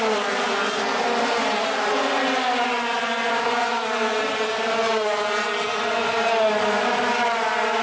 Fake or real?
real